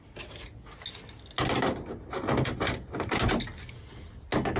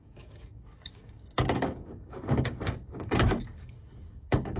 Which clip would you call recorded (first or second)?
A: first